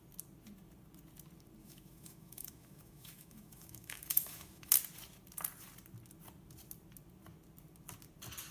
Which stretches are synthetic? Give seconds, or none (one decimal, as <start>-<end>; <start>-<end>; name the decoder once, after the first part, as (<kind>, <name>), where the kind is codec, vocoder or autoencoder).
1.6-4.7 (autoencoder, DAC-VAE)